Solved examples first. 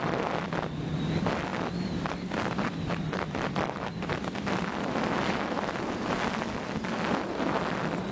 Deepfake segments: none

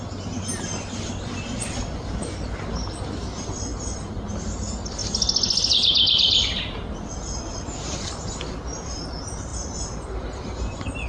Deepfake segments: none

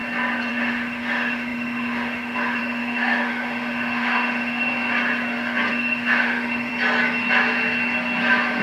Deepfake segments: 0.5-4.7; 5.7-6.7

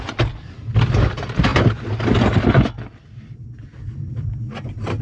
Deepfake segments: none

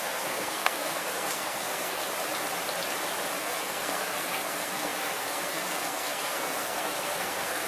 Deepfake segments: 0.0-2.0; 3.4-7.7

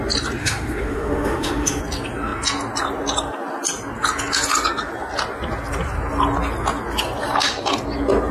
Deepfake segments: 0.4-1.8

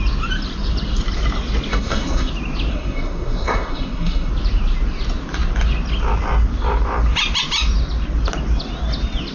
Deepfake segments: 1.7-2.3; 2.7-4.3